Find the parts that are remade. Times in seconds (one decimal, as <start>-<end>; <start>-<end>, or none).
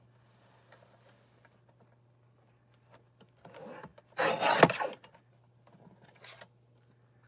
none